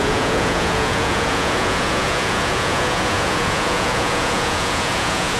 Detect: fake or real fake